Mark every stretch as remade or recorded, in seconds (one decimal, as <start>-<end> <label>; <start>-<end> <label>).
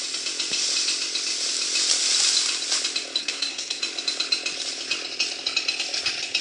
0.0-3.2 recorded; 3.2-3.8 remade; 3.8-6.4 recorded